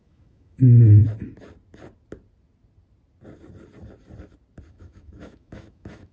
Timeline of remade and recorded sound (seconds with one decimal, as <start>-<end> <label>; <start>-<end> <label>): 0.0-1.0 remade; 1.0-4.7 recorded; 4.7-6.1 remade